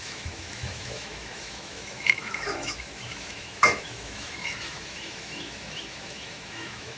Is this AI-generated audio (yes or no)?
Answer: yes